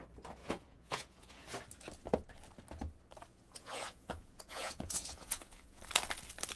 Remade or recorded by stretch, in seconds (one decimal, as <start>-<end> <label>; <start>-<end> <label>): 0.0-0.4 recorded; 0.4-1.4 remade; 1.4-3.3 recorded; 3.3-5.8 remade; 5.8-6.6 recorded